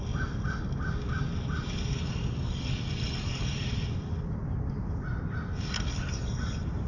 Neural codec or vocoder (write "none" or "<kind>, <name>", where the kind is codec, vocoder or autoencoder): none